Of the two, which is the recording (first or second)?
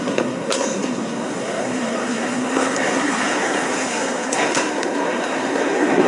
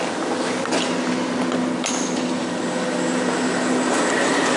second